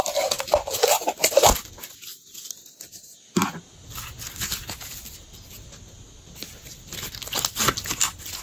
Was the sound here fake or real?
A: real